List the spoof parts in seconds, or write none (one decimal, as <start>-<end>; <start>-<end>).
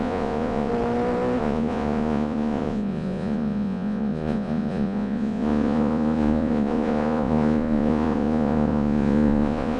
0.0-0.7; 1.4-9.8